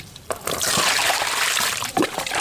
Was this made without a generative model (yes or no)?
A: no